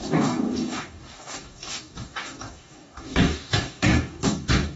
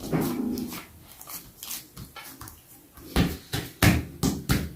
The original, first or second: second